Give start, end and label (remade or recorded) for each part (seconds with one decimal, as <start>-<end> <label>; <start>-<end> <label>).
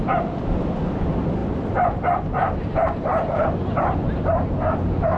0.0-1.4 recorded; 1.4-4.5 remade; 4.5-5.2 recorded